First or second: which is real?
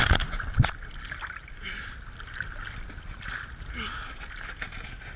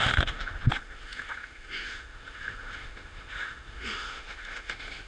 first